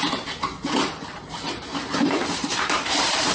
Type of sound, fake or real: fake